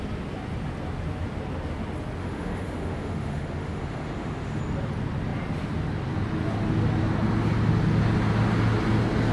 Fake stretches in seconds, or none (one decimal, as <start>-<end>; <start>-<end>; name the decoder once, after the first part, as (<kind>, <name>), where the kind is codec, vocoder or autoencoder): 2.2-4.6 (autoencoder, DAC-VAE)